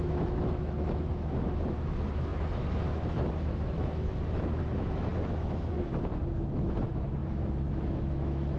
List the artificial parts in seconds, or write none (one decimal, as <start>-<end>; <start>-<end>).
0.0-8.6